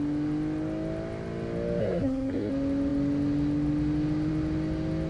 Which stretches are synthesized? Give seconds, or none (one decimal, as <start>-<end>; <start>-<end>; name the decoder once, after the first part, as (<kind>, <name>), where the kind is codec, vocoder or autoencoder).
1.8-2.5 (codec, SNAC)